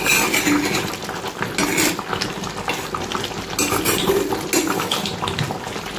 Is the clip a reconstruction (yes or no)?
no